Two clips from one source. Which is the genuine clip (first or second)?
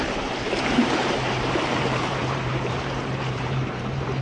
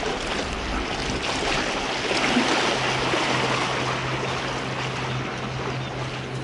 second